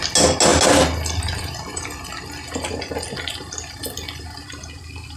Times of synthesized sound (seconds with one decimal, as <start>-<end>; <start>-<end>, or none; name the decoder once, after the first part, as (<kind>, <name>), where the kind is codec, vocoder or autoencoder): none